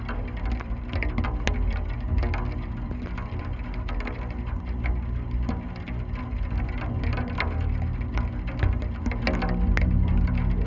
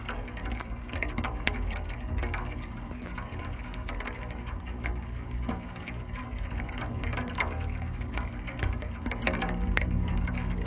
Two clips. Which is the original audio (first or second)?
first